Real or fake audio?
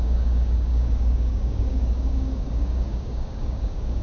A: fake